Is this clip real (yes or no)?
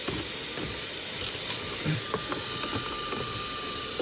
no